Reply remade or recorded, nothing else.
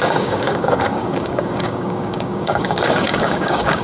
remade